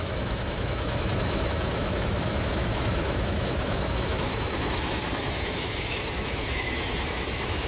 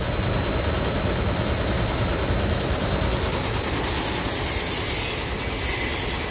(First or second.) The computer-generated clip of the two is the first